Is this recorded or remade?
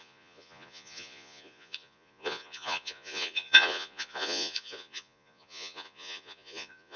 remade